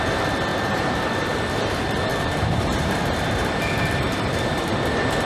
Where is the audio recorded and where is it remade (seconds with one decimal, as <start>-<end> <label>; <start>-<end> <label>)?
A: 0.0-0.5 recorded; 0.5-1.0 remade; 1.0-2.1 recorded; 2.1-4.7 remade; 4.7-5.3 recorded